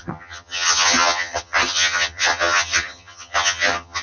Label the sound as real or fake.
fake